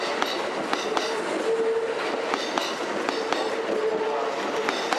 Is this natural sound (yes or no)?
yes